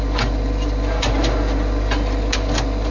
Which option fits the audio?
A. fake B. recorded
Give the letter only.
B